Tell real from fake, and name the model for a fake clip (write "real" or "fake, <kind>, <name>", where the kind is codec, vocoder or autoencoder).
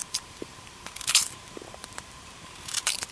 fake, vocoder, BigVGAN v2